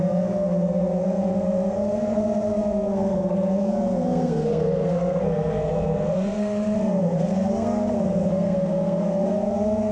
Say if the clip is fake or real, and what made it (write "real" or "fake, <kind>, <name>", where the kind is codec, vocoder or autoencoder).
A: fake, codec, SNAC